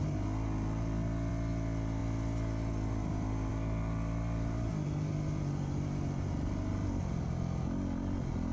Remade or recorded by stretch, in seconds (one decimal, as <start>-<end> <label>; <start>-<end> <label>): 0.0-8.5 recorded